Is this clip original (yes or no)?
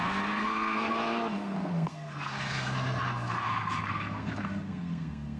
no